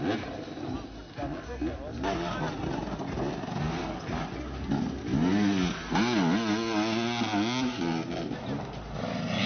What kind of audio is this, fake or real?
real